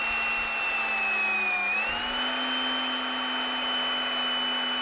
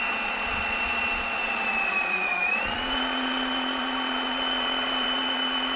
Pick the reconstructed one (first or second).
second